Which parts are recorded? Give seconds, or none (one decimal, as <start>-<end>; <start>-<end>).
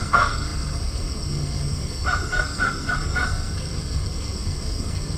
none